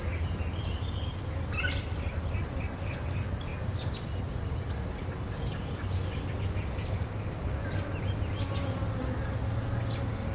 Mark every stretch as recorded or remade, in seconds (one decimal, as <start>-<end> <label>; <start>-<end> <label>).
0.0-10.3 recorded